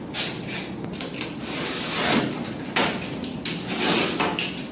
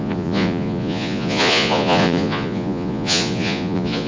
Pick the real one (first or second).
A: first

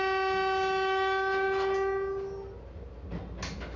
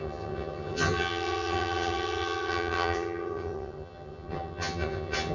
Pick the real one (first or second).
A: first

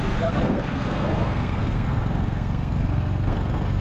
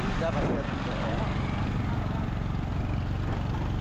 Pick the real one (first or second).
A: second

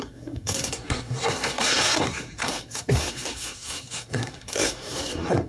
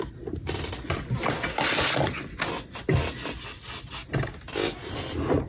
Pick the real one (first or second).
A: second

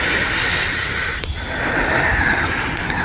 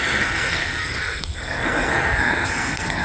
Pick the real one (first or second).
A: first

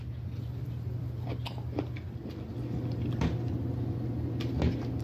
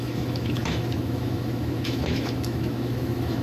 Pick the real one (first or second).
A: first